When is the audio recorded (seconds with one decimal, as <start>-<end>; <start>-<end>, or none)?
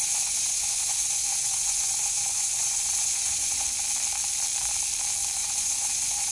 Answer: 3.8-5.4